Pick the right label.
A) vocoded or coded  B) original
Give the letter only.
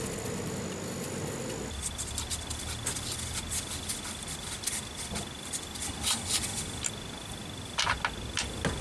B